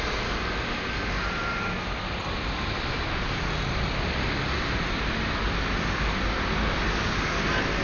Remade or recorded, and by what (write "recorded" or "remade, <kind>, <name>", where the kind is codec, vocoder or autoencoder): recorded